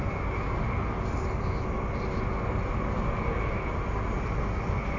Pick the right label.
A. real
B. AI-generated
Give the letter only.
A